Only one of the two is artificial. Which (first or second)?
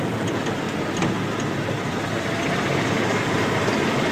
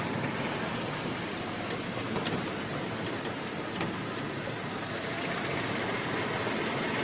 second